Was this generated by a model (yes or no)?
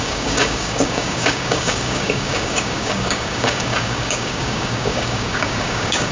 yes